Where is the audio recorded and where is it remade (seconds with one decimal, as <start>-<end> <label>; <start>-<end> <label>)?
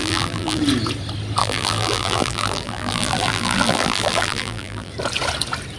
0.0-0.6 remade; 0.6-1.4 recorded; 1.4-4.9 remade; 4.9-5.8 recorded